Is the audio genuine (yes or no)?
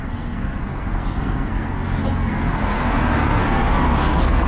no